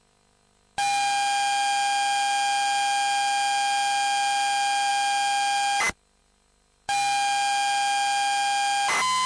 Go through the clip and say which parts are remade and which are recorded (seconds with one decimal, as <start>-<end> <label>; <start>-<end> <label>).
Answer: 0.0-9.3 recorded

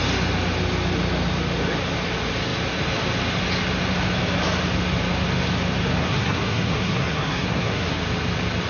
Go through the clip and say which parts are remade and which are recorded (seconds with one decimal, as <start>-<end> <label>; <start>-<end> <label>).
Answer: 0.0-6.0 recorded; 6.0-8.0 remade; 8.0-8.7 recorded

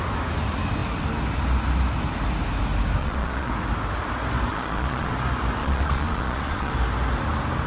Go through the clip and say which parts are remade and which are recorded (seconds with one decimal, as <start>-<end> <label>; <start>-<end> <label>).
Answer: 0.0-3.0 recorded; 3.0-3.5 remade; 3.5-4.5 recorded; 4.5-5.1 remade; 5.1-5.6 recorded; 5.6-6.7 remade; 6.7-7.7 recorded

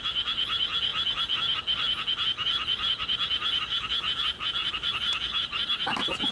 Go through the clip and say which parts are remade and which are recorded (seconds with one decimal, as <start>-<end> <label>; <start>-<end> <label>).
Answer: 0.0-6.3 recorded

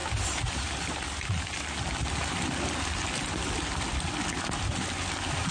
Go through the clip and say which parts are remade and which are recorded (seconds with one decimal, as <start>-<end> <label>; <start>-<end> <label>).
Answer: 0.0-5.5 recorded

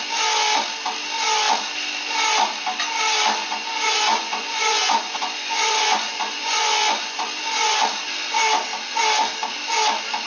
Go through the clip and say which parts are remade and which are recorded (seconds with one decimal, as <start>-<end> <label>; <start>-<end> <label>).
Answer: 0.0-3.4 recorded; 3.4-7.8 remade; 7.8-10.3 recorded

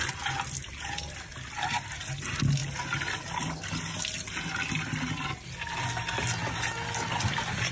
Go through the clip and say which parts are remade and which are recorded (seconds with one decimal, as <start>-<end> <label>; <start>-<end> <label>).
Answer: 0.0-7.7 recorded